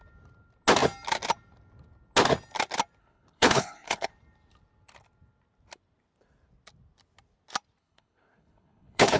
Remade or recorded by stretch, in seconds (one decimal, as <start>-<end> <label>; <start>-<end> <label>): 0.0-3.0 recorded; 3.0-4.1 remade; 4.1-7.8 recorded; 7.8-9.2 remade